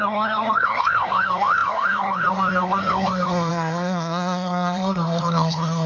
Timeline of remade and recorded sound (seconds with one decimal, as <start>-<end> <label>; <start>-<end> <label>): 0.0-5.9 remade